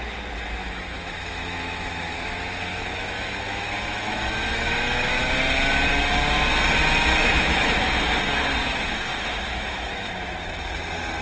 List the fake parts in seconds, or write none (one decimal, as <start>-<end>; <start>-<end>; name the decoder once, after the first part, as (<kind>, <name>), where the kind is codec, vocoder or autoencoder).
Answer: 0.6-5.3 (autoencoder, DAC-VAE); 7.2-8.2; 8.6-10.1